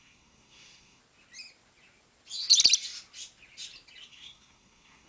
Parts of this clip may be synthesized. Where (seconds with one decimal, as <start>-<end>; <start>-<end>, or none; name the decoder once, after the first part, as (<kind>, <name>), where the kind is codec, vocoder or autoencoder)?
0.0-1.0 (codec, SNAC); 4.1-5.1